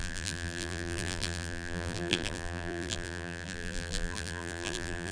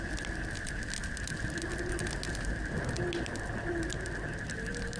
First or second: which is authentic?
second